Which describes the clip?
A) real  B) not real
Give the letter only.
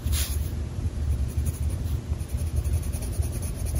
B